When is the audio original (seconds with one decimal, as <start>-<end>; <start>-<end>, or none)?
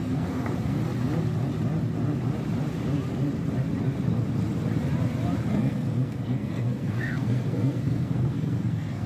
0.8-5.5